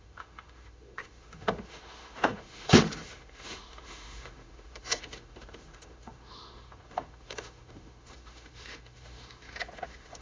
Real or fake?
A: fake